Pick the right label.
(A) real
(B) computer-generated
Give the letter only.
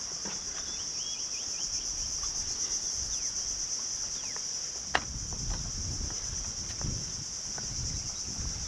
A